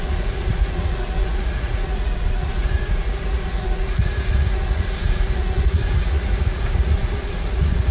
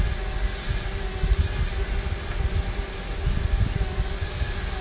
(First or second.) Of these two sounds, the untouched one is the second